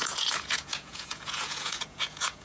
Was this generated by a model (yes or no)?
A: yes